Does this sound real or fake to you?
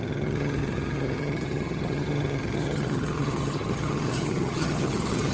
fake